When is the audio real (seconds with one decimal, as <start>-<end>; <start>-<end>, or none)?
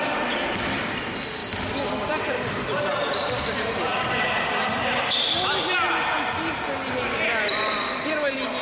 0.0-8.6